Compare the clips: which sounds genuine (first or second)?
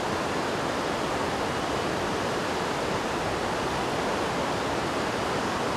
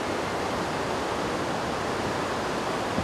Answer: second